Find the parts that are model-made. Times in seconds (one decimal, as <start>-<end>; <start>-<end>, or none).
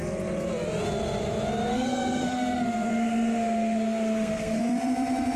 1.7-4.6